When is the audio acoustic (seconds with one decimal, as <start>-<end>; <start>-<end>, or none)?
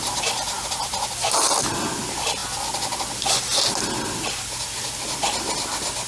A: 0.0-6.1